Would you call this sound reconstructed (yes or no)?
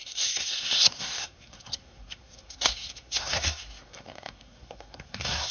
yes